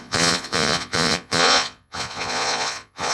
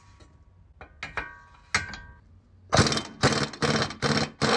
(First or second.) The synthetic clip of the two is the first